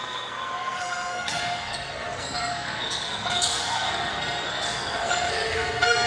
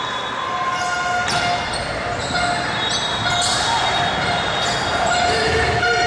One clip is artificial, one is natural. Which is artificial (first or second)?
first